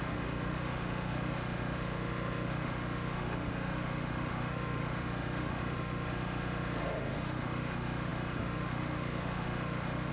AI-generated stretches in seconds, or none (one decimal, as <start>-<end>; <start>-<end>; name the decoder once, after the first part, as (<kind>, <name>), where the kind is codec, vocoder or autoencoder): 0.0-10.1 (autoencoder, DAC-VAE)